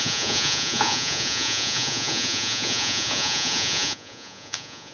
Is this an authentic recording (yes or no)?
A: no